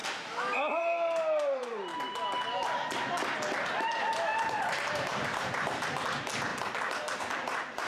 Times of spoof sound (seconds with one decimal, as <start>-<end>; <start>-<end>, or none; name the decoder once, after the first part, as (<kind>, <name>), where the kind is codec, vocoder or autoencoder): 0.8-1.9 (vocoder, BigVGAN v2); 4.9-6.5; 7.2-7.9